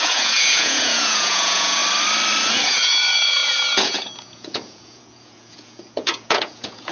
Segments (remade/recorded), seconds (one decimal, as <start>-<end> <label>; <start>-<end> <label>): 0.0-1.8 remade; 1.8-2.5 recorded; 2.5-6.9 remade